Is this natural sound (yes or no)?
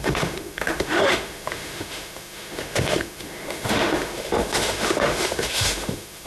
no